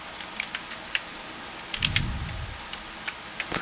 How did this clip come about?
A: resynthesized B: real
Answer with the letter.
B